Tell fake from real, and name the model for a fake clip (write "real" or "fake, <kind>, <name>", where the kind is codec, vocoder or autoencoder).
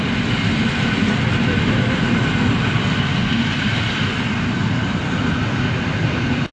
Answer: real